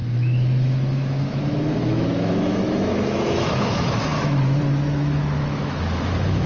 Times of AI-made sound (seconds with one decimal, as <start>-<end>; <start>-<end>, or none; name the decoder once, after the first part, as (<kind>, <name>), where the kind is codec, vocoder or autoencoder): 0.0-6.5 (autoencoder, DAC-VAE)